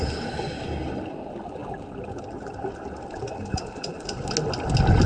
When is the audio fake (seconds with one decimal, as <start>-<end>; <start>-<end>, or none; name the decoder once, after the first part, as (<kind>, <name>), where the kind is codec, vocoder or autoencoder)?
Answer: none